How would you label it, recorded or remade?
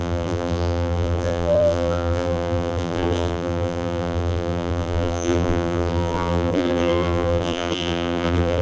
remade